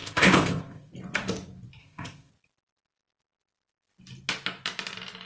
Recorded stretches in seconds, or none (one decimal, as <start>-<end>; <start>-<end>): 0.9-1.8; 2.3-5.3